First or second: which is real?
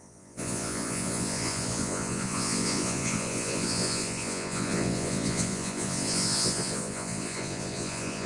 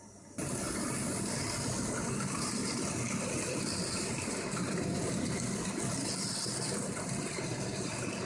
second